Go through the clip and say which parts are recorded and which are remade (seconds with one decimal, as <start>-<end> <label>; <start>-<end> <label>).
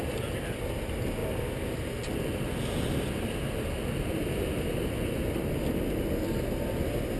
0.0-7.2 recorded